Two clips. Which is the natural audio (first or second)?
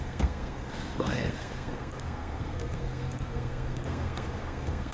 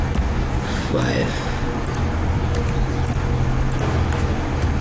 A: second